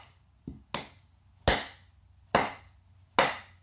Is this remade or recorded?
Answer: recorded